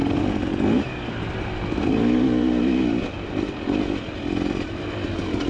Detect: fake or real real